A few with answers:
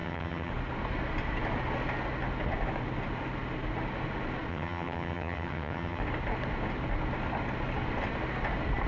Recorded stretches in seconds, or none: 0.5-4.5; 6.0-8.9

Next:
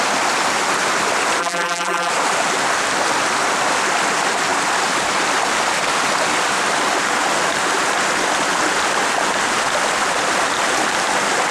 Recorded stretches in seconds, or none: 0.0-1.4; 2.1-11.5